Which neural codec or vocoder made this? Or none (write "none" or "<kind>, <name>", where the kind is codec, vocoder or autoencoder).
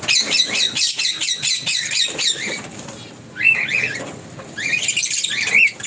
none